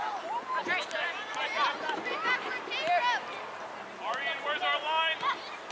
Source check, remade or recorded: recorded